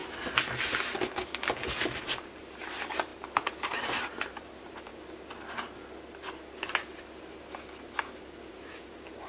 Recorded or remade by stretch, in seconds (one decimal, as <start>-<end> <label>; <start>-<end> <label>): 0.0-2.0 recorded; 2.0-4.9 remade; 4.9-8.5 recorded; 8.5-9.3 remade